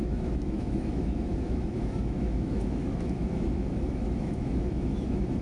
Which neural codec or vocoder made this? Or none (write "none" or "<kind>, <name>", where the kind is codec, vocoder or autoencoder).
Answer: autoencoder, DAC-VAE